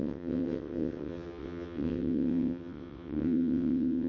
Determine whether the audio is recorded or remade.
remade